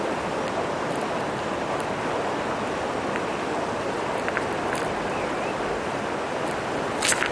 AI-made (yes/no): no